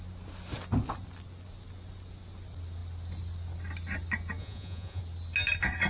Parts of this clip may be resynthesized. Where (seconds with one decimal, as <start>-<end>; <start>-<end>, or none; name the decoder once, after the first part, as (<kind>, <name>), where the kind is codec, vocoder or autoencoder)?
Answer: 4.4-5.0 (vocoder, Vocos)